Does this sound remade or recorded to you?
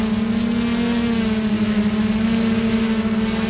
recorded